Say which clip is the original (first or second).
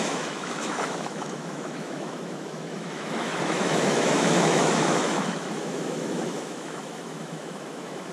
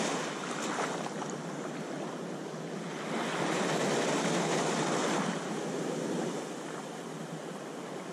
second